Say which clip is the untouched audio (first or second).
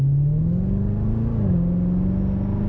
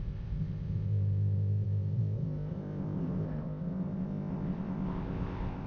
first